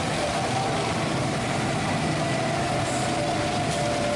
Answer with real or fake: real